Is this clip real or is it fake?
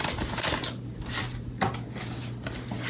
real